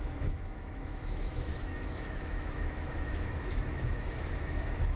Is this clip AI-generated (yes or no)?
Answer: yes